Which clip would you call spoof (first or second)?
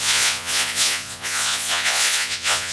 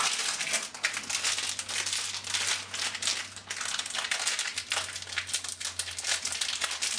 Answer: first